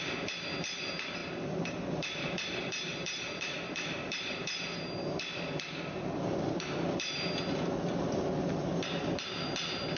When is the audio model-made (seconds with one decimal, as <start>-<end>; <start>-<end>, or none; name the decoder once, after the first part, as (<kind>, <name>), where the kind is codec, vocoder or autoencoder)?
1.2-4.6 (vocoder, BigVGAN v2)